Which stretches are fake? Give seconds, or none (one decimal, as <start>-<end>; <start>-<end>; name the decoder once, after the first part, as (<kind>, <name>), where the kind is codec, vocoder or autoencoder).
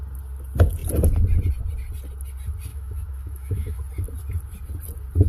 2.7-3.8 (autoencoder, DAC-VAE)